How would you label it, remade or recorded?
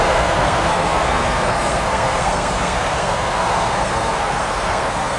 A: remade